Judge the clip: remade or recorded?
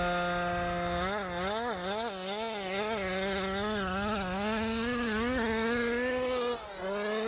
recorded